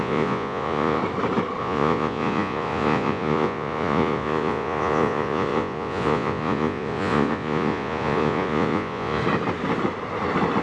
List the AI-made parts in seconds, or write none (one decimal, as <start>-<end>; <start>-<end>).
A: 0.0-1.0; 1.6-9.2